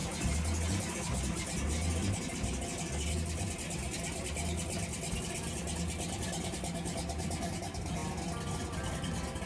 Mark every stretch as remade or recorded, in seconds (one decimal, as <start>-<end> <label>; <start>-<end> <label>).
0.0-9.5 recorded